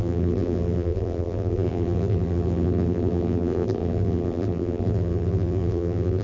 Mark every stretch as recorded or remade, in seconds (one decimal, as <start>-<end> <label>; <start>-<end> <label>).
0.0-6.2 remade